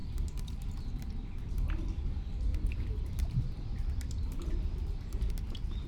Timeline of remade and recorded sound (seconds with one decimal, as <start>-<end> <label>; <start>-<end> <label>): 0.0-1.1 remade; 1.1-2.5 recorded; 2.5-5.3 remade; 5.3-5.9 recorded